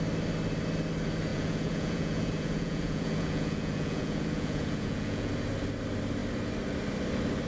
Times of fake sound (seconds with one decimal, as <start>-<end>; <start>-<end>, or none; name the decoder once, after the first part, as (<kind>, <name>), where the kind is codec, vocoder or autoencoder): 1.3-5.3 (vocoder, Vocos)